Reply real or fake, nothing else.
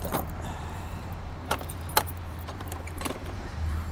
fake